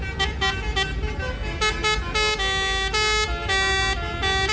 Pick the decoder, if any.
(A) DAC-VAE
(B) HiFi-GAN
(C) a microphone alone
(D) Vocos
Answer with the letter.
C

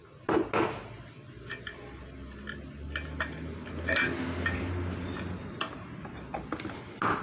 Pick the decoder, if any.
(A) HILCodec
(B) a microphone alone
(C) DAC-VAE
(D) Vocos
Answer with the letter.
B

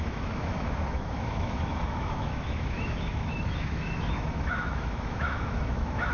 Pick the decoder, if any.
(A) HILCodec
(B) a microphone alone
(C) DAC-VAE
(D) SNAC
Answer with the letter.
C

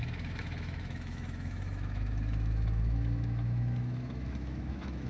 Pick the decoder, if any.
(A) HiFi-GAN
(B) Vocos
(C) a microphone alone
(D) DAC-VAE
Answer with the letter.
D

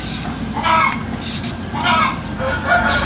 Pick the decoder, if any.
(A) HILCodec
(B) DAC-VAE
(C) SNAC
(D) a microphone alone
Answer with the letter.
D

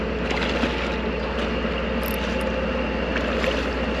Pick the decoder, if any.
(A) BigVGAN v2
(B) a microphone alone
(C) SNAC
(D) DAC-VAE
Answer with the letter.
B